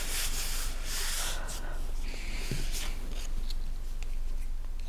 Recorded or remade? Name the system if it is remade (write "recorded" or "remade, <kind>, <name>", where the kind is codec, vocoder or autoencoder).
recorded